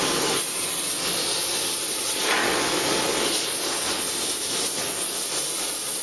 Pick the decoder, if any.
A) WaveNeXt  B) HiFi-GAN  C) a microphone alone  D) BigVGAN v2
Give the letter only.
C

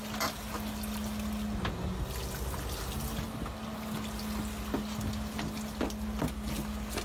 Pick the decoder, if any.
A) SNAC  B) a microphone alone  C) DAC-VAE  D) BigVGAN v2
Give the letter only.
B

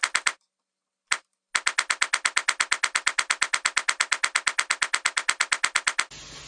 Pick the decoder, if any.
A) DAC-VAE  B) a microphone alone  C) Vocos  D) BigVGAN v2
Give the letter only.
B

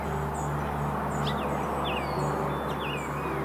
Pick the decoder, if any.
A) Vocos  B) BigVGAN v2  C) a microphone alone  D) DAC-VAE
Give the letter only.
C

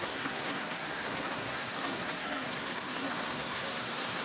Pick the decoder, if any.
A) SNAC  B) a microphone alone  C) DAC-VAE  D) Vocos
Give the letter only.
A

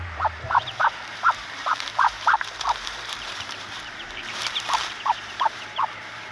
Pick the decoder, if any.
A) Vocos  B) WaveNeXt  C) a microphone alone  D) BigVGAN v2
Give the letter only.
D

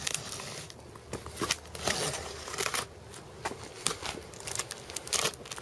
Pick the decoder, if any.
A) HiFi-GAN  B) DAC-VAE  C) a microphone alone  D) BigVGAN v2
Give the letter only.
C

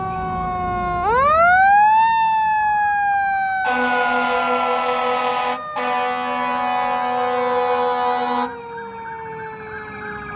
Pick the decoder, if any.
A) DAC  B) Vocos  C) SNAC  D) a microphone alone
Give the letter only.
D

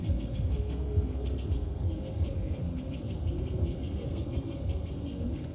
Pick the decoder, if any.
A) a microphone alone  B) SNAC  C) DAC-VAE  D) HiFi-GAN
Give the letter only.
B